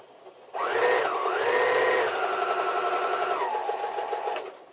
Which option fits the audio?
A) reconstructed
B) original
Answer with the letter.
B